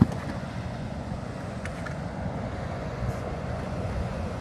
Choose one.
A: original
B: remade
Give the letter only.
B